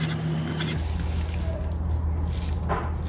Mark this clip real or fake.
real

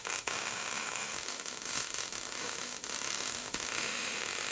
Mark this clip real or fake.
fake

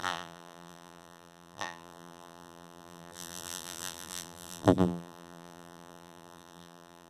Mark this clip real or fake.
fake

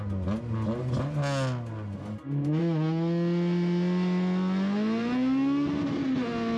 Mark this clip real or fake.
real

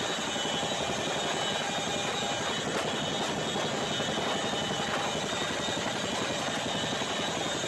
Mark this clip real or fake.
real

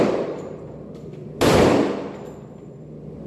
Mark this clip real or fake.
real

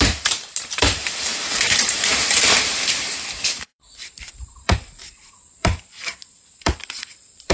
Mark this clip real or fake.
fake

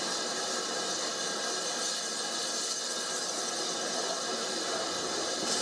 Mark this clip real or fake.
real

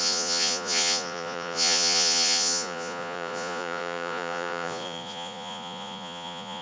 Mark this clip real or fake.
fake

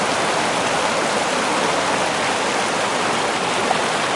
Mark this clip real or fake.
real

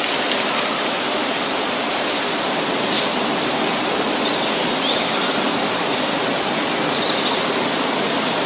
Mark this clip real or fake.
real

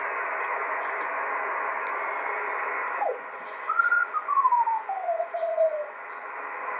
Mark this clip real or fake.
fake